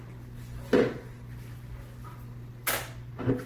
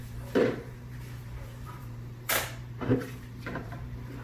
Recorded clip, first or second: first